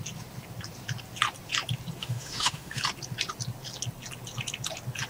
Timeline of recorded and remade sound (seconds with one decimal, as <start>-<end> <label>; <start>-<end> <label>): 0.0-2.0 recorded; 2.0-2.8 remade; 2.8-5.1 recorded